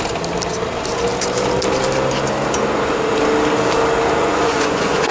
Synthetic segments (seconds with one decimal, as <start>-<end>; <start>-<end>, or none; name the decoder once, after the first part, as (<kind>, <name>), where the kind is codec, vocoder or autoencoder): 4.2-5.1 (vocoder, Vocos)